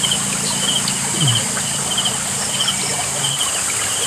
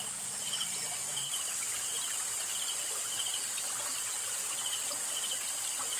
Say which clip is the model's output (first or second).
second